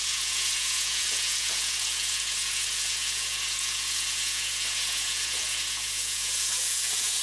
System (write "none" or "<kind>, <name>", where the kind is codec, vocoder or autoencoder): vocoder, Vocos